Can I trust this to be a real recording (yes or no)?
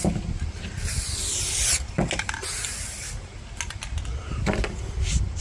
yes